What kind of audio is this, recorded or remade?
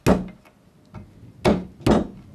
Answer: recorded